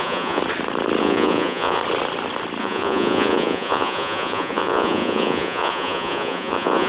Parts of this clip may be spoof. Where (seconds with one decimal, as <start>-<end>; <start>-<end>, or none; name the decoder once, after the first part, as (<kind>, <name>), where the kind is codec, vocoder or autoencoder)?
0.0-0.4 (vocoder, Vocos); 1.0-1.8; 2.6-6.9